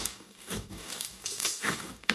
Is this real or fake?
fake